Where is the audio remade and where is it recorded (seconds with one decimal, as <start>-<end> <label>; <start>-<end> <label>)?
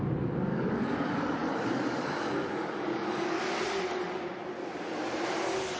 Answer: 0.0-0.5 recorded; 0.5-3.4 remade; 3.4-5.8 recorded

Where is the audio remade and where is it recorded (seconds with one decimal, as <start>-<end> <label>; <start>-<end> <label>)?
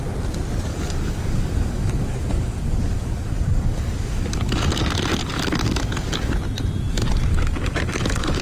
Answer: 0.0-0.7 recorded; 0.7-4.7 remade; 4.7-5.2 recorded; 5.2-6.3 remade; 6.3-7.3 recorded; 7.3-8.4 remade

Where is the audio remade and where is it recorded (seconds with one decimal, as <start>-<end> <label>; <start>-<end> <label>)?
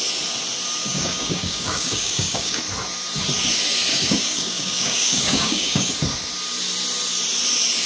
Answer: 0.0-0.8 recorded; 0.8-2.6 remade; 2.6-3.9 recorded; 3.9-5.9 remade; 5.9-7.9 recorded